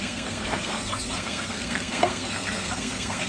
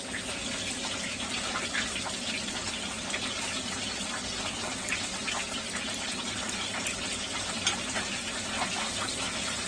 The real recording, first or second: second